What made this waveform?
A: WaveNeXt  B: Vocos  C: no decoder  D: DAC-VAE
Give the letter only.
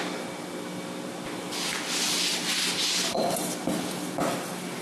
C